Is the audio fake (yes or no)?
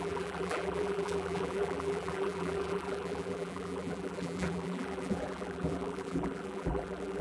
yes